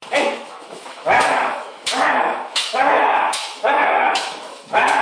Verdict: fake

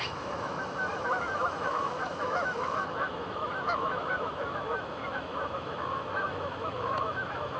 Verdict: fake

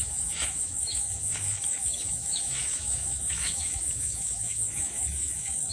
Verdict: fake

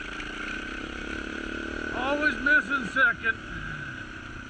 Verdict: real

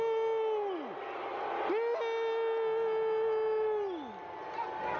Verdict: real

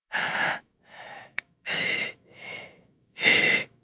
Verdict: fake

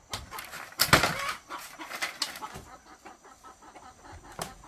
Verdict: real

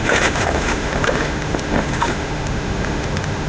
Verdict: fake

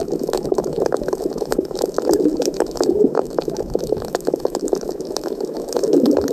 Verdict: fake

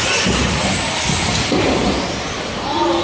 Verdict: real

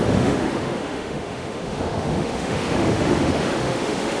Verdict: fake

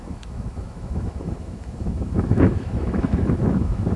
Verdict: fake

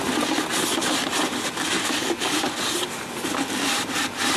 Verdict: real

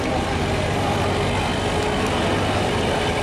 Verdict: real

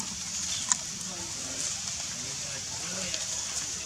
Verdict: real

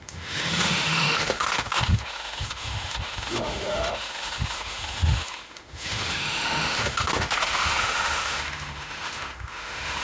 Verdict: fake